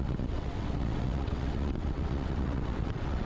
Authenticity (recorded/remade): remade